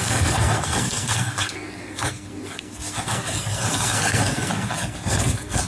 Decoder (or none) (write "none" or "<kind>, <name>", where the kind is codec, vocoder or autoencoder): codec, SNAC